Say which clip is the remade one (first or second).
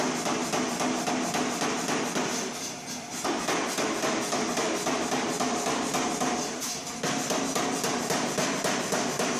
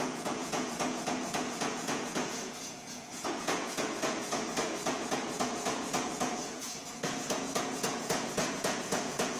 second